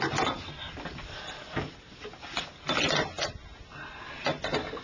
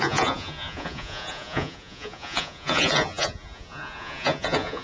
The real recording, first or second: first